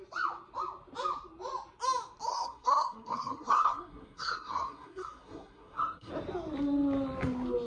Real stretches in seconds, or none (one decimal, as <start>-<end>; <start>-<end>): 0.0-2.3; 6.1-7.7